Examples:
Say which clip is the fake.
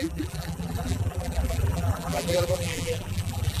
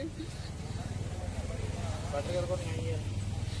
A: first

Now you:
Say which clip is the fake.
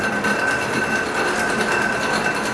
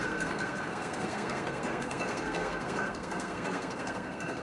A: second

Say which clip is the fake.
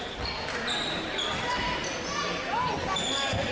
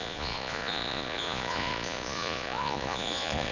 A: second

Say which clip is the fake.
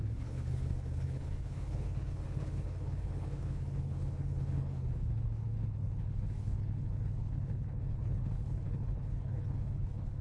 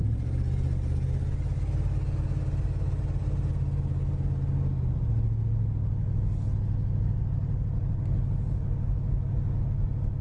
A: first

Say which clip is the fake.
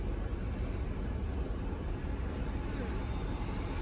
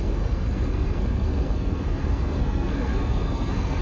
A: second